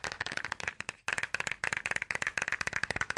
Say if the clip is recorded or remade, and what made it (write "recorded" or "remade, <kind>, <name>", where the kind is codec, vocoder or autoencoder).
recorded